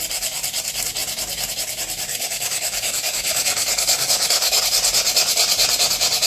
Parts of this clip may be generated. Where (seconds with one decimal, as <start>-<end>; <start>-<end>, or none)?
2.1-4.6